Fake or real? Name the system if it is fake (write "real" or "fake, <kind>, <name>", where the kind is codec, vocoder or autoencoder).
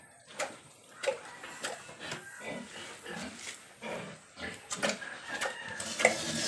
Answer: real